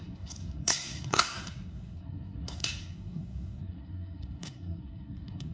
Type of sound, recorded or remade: remade